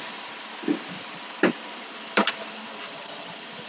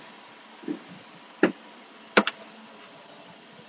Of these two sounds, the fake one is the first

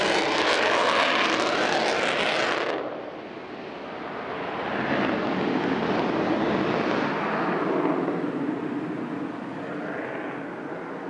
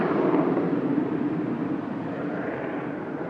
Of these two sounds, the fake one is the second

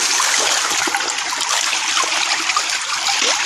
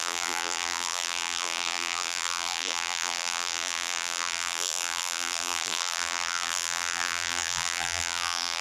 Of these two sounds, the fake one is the second